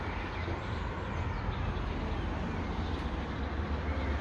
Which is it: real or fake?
real